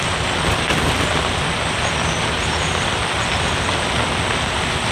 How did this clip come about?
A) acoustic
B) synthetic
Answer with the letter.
A